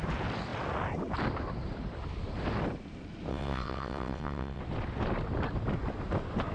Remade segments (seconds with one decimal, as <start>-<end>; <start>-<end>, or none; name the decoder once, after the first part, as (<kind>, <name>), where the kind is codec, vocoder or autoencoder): 3.3-4.6 (vocoder, WaveNeXt)